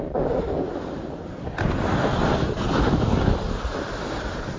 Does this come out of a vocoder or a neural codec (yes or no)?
no